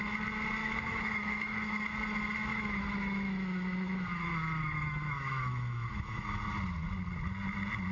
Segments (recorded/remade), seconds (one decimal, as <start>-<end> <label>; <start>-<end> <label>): 0.0-0.6 recorded; 0.6-1.8 remade; 1.8-2.5 recorded; 2.5-6.4 remade; 6.4-7.9 recorded